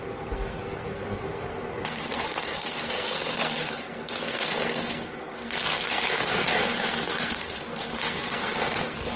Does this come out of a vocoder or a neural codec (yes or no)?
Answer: yes